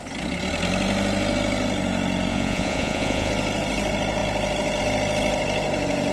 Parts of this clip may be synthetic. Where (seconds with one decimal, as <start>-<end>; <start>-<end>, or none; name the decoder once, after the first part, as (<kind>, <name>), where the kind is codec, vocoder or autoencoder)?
2.3-3.3 (vocoder, Vocos)